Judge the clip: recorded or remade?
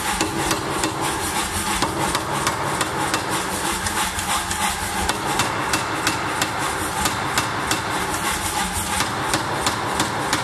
recorded